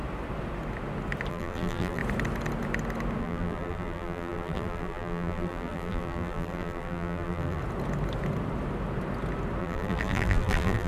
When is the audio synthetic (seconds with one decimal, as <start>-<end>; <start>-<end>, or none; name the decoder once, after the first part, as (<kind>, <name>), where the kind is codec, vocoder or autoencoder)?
1.3-2.0 (vocoder, BigVGAN v2); 3.2-7.6; 9.6-10.9